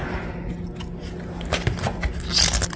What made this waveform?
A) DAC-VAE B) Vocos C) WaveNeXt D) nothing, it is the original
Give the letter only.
D